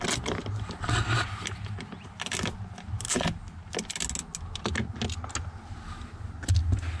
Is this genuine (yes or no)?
yes